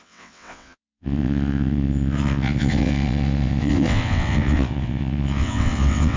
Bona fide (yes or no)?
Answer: no